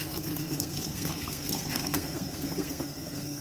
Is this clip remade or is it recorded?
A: remade